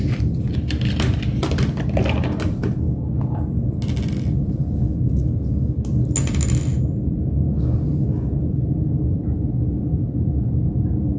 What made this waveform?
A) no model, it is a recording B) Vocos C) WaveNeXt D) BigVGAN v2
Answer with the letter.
A